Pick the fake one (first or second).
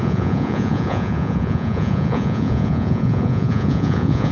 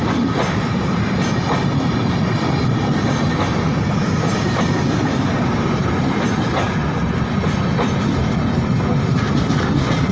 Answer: first